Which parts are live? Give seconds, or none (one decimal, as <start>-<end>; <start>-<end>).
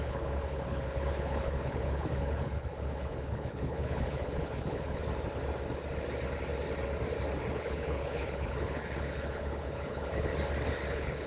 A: 5.0-7.5; 10.3-10.9